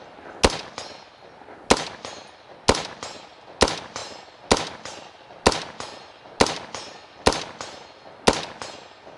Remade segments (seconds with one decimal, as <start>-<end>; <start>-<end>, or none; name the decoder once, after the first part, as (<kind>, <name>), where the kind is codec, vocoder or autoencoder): none